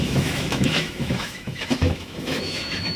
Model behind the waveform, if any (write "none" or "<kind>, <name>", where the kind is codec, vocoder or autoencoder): autoencoder, DAC-VAE